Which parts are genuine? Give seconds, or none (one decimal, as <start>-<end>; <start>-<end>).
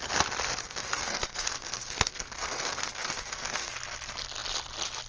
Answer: 0.0-0.6; 3.7-5.1